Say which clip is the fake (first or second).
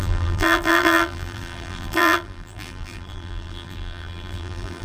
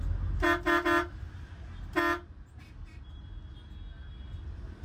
first